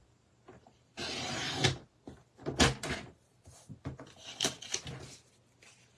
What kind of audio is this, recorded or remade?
recorded